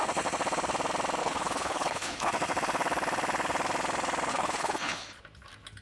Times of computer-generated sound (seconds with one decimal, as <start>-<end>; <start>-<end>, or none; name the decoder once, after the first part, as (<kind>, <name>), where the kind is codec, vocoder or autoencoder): 1.2-2.3 (codec, HILCodec); 4.3-5.2